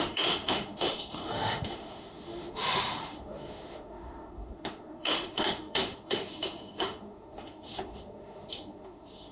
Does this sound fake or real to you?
fake